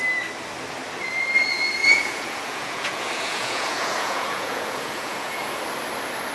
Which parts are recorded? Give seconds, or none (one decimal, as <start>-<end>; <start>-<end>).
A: 0.0-1.8; 5.6-6.3